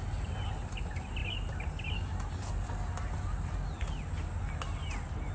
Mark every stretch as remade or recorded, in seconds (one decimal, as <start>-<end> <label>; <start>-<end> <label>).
0.0-5.3 recorded